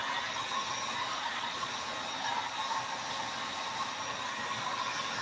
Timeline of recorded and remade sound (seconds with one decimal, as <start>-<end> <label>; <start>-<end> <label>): 0.0-1.1 recorded; 1.1-1.7 remade; 1.7-5.2 recorded